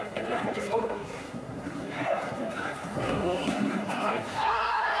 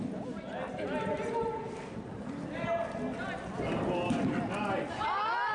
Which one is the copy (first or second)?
first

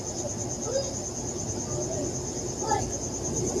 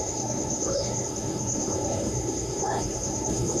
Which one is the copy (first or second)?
second